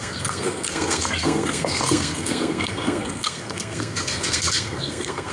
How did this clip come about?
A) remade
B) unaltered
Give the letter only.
A